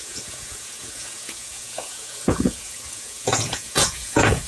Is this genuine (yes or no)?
no